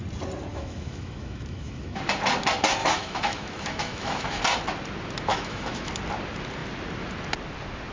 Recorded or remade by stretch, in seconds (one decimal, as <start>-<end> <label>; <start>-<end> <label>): 0.0-0.5 recorded; 0.5-2.0 remade; 2.0-2.8 recorded; 2.8-4.4 remade; 4.4-5.3 recorded; 5.3-5.9 remade; 5.9-7.9 recorded